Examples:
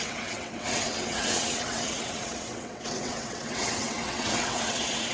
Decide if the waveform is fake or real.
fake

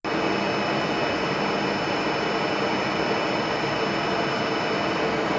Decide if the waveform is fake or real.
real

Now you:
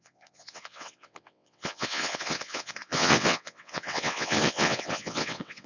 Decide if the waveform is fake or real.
fake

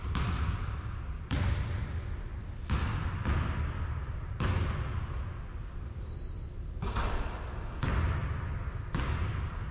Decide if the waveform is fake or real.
real